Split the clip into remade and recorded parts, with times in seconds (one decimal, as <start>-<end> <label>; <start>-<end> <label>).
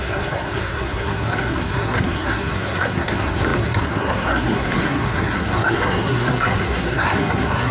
0.0-7.7 remade